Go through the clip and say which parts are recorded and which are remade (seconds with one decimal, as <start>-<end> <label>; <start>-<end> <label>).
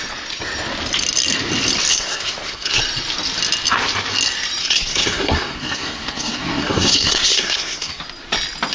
0.0-1.9 recorded; 1.9-2.8 remade; 2.8-4.6 recorded; 4.6-8.0 remade; 8.0-8.7 recorded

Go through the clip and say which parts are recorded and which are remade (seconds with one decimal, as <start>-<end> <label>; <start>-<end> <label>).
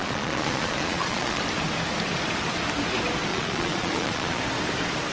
0.0-1.4 remade; 1.4-3.3 recorded; 3.3-4.4 remade; 4.4-5.1 recorded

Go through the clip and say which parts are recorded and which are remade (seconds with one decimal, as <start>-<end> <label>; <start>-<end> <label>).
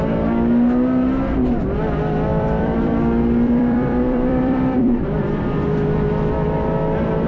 0.0-2.3 recorded; 2.3-5.2 remade; 5.2-7.3 recorded